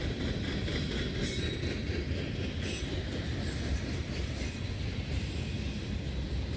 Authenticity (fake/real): real